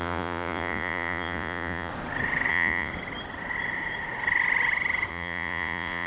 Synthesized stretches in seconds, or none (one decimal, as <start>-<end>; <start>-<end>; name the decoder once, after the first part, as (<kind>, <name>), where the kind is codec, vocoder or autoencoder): 0.0-1.9 (vocoder, Vocos); 2.5-2.9; 5.1-6.1